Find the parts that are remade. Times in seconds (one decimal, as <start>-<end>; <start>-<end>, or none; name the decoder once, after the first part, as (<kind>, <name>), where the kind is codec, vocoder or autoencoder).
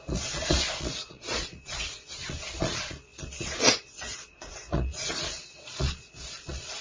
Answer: 0.0-6.8 (vocoder, Vocos)